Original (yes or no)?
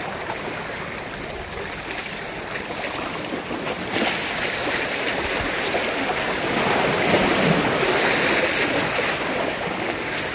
yes